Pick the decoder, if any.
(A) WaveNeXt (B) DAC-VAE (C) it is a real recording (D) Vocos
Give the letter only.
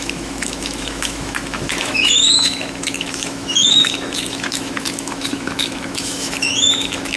B